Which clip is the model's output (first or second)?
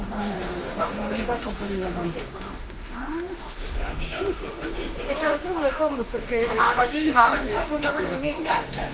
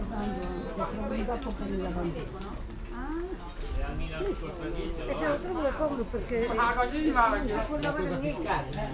first